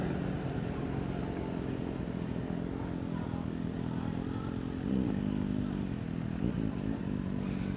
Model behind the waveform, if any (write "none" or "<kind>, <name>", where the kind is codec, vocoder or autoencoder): none